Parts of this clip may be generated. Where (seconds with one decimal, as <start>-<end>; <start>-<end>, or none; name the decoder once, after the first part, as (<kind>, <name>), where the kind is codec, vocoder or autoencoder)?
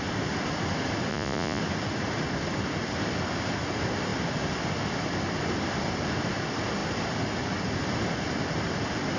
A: 1.1-1.6 (vocoder, Vocos)